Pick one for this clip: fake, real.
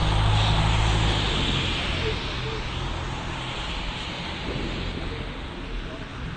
real